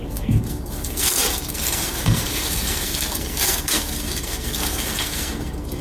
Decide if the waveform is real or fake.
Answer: fake